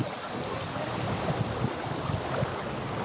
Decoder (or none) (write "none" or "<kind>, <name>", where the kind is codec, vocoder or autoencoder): none